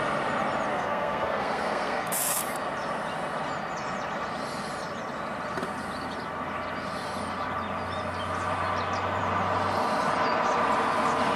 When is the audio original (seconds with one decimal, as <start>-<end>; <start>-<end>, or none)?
0.0-0.7; 2.4-11.4